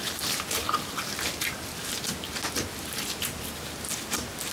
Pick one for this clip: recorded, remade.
recorded